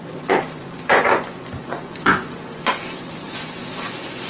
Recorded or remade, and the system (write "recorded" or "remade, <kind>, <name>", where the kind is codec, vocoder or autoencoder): remade, vocoder, Vocos